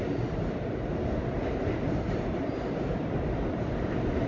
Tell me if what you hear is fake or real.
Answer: real